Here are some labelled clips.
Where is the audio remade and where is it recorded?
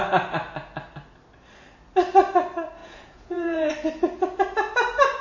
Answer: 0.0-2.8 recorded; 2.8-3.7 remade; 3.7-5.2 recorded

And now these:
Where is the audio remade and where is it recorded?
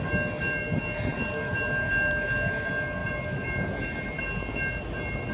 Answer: 0.0-5.3 recorded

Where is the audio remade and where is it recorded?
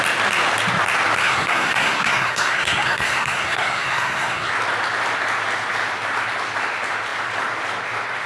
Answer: 0.0-1.2 recorded; 1.2-4.5 remade; 4.5-8.3 recorded